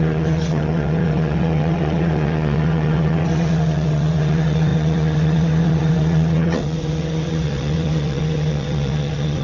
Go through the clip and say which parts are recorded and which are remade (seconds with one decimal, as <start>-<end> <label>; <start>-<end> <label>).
0.0-9.4 remade